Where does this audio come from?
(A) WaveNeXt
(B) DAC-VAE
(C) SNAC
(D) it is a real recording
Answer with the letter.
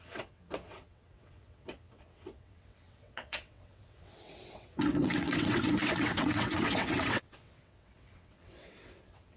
A